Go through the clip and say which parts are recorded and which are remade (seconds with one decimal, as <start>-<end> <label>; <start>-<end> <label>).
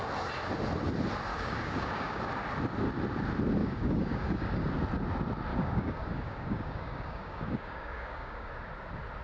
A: 0.0-1.3 recorded; 1.3-2.2 remade; 2.2-3.6 recorded; 3.6-4.7 remade; 4.7-5.5 recorded; 5.5-8.5 remade; 8.5-9.2 recorded